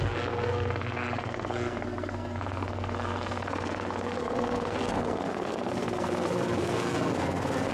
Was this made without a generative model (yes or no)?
no